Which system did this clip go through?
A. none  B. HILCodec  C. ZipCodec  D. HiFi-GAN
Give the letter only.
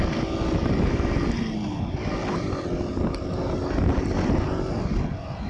A